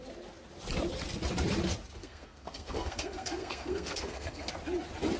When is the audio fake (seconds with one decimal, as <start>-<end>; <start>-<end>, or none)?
2.0-4.5